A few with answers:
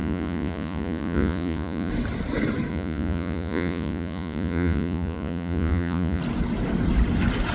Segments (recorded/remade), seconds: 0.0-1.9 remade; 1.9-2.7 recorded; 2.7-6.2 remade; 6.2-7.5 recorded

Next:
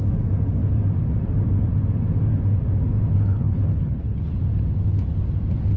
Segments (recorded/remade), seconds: 0.0-3.1 recorded; 3.1-4.4 remade; 4.4-5.8 recorded

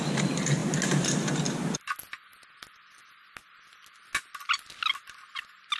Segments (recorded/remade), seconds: 0.0-5.8 recorded

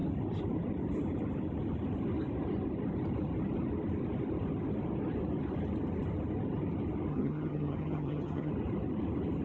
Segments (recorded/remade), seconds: 0.0-7.1 recorded; 7.1-8.5 remade; 8.5-9.4 recorded

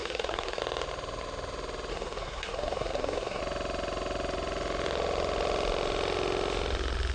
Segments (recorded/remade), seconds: 0.0-0.6 remade; 0.6-1.9 recorded; 1.9-3.4 remade; 3.4-7.1 recorded

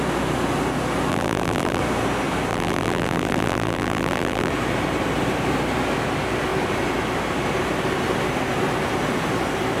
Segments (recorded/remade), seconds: 0.0-1.1 recorded; 1.1-1.8 remade; 1.8-2.5 recorded; 2.5-4.5 remade; 4.5-9.8 recorded

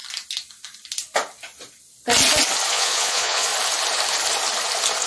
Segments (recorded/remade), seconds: 0.0-2.7 recorded; 2.7-3.5 remade; 3.5-5.1 recorded